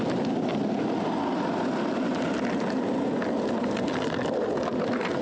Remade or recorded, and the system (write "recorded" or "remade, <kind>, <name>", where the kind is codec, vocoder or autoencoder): recorded